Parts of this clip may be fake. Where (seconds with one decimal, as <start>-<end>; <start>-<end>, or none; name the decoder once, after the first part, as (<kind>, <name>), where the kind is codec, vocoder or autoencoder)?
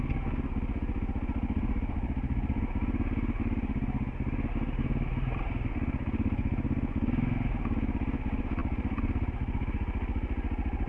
none